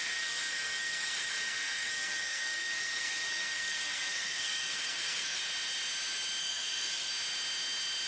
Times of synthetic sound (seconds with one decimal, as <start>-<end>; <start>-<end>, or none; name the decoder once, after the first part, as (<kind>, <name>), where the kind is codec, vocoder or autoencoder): 0.0-5.4 (codec, SNAC); 6.4-7.1